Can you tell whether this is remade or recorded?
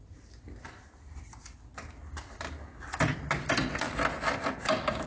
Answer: recorded